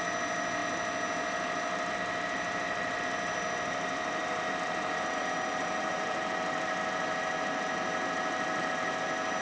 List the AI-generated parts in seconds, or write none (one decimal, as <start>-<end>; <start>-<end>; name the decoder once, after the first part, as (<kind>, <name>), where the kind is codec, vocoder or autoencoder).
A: none